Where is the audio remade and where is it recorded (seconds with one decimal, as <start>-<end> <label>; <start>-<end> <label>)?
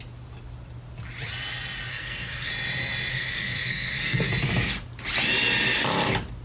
0.0-1.9 recorded; 1.9-2.5 remade; 2.5-3.1 recorded; 3.1-4.3 remade; 4.3-6.4 recorded